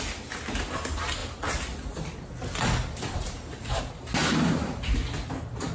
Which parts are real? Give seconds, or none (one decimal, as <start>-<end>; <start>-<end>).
0.0-1.2; 3.8-4.2; 4.9-5.7